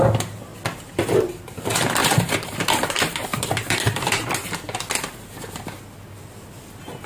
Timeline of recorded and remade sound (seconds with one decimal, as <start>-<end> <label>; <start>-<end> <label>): 0.0-2.0 recorded; 2.0-4.3 remade; 4.3-7.1 recorded